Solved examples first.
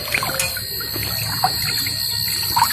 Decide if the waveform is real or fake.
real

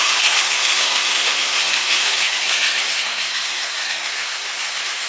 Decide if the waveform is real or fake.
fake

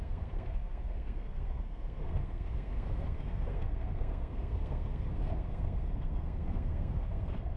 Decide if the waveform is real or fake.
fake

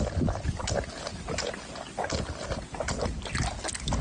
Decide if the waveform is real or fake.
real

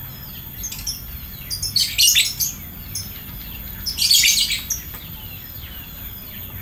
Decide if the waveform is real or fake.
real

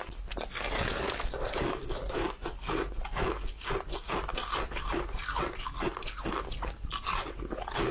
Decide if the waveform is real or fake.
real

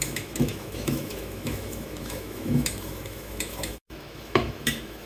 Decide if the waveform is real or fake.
fake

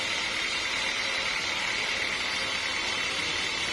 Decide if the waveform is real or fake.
real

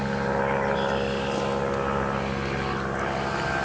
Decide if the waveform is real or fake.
real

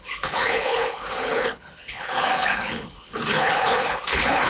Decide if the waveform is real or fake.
fake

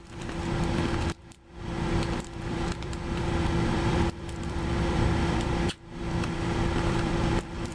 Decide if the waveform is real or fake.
fake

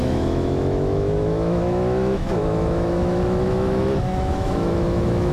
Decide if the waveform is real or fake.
fake